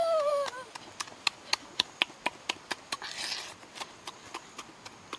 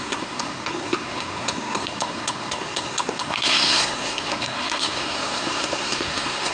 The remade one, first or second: second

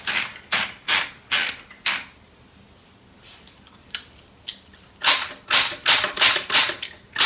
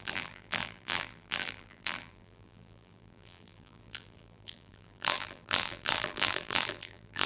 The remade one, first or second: second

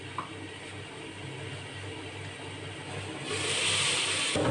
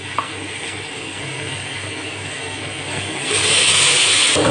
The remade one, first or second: second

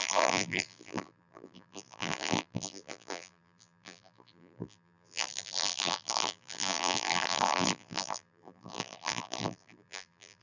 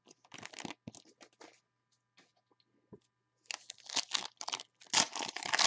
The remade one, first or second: first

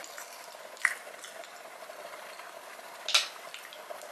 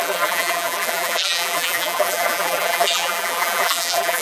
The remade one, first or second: second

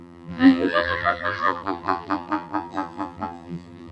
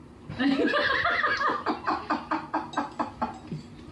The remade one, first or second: first